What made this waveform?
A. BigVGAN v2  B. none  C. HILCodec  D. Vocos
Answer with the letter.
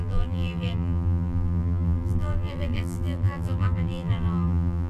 A